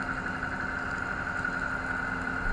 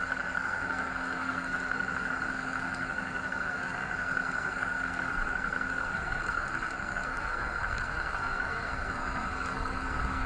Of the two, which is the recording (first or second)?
first